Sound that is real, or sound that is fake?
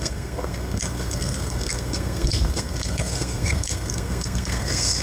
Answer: fake